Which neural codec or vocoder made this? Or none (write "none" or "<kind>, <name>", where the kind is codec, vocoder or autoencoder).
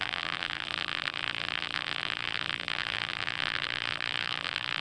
vocoder, BigVGAN v2